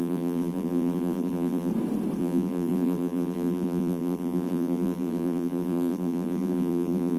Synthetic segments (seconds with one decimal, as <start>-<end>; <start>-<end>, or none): 0.0-1.7; 2.2-7.2

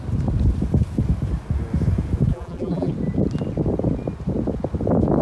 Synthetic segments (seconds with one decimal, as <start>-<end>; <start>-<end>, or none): 2.3-2.9

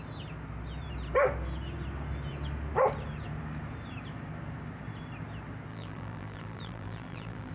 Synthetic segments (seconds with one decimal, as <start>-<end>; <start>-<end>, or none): 5.7-7.5

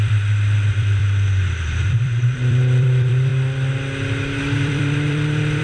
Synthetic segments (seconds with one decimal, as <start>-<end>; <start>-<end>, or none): 0.0-1.0; 1.5-3.3; 4.4-5.6

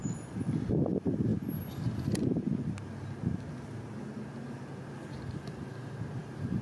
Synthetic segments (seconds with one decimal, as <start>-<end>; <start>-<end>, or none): 0.8-1.3; 5.1-6.6

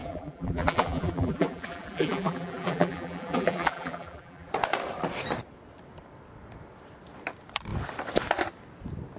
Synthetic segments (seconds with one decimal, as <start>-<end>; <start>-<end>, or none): 0.0-4.5

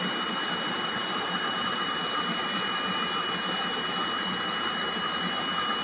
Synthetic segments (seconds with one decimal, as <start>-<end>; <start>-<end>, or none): 0.0-5.8

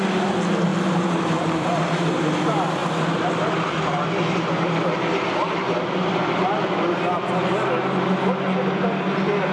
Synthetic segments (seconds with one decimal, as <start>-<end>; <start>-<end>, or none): 0.7-2.1